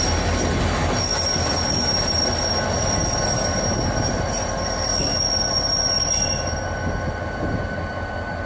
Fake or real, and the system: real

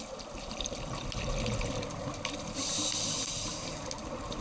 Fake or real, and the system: real